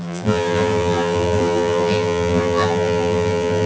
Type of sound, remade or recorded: remade